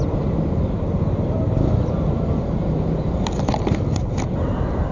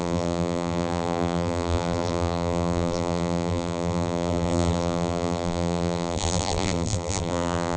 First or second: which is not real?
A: second